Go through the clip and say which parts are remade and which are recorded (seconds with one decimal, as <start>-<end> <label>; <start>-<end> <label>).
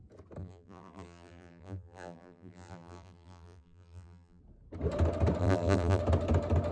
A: 0.0-0.4 recorded; 0.4-4.4 remade; 4.4-5.4 recorded; 5.4-6.0 remade; 6.0-6.7 recorded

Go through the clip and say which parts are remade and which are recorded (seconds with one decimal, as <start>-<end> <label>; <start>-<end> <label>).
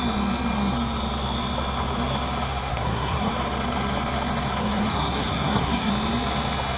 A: 0.0-2.7 recorded; 2.7-3.3 remade; 3.3-4.6 recorded; 4.6-5.9 remade; 5.9-6.8 recorded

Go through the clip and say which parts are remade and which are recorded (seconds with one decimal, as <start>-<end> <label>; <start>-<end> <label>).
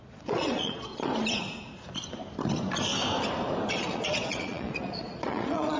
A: 0.0-0.9 remade; 0.9-3.7 recorded; 3.7-5.8 remade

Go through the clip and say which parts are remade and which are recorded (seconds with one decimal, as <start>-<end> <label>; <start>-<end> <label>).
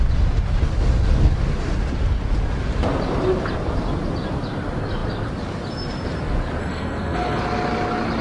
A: 0.0-6.6 recorded; 6.6-7.4 remade; 7.4-8.2 recorded